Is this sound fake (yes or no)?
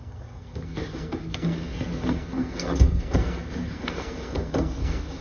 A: yes